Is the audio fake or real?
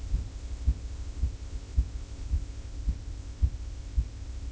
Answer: fake